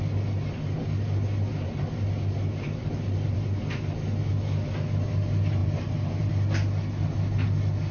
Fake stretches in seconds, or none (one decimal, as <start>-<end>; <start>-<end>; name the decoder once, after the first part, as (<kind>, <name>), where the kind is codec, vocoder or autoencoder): 1.5-3.5 (vocoder, BigVGAN v2); 5.6-6.3